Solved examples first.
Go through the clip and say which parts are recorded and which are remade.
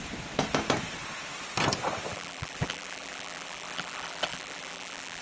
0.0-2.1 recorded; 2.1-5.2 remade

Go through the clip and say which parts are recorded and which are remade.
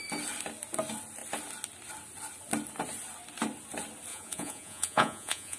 0.0-4.1 recorded; 4.1-5.6 remade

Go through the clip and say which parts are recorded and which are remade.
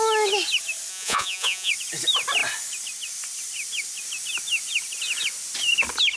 0.0-0.9 recorded; 0.9-1.7 remade; 1.7-6.2 recorded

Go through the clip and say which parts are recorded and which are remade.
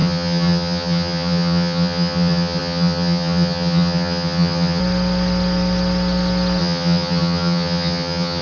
0.0-4.8 remade; 4.8-6.6 recorded; 6.6-8.4 remade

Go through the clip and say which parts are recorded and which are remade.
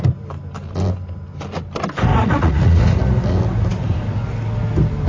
0.0-2.1 recorded; 2.1-3.0 remade; 3.0-5.1 recorded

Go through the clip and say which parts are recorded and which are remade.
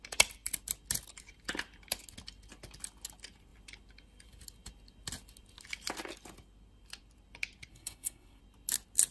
0.0-7.7 recorded; 7.7-8.4 remade; 8.4-9.1 recorded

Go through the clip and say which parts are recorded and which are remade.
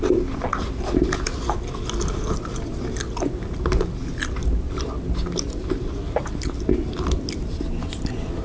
0.0-8.4 recorded